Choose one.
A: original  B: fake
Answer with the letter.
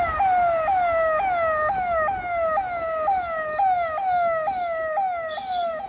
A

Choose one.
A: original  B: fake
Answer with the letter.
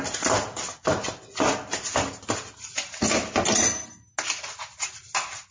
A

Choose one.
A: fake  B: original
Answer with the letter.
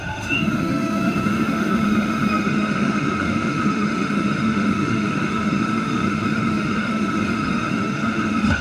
A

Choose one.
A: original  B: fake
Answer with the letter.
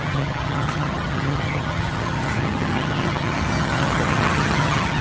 B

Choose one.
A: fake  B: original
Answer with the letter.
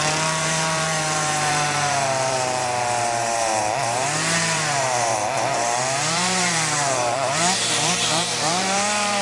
A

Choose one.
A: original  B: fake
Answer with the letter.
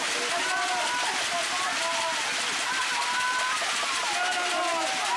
A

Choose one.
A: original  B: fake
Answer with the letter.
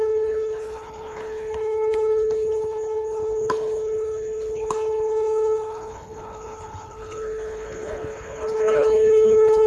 B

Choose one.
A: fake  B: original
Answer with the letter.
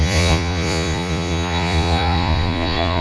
A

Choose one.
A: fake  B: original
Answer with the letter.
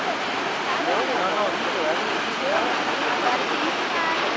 B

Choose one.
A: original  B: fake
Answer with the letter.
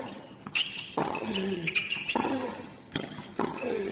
B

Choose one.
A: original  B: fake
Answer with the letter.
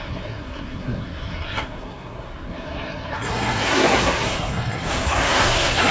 B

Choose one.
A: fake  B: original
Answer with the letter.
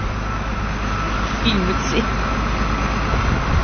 B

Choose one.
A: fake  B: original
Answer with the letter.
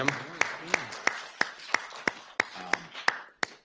B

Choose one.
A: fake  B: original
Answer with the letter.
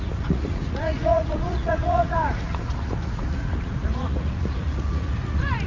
A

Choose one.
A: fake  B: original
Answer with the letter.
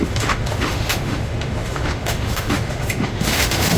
A